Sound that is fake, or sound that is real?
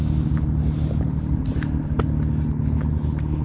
real